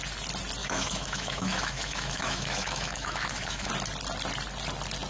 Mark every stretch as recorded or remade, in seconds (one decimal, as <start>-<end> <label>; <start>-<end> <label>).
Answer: 0.0-0.6 recorded; 0.6-3.7 remade; 3.7-5.1 recorded